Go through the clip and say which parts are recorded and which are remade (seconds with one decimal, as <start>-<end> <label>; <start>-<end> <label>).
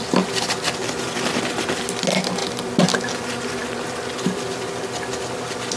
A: 0.0-0.8 recorded; 0.8-1.9 remade; 1.9-5.8 recorded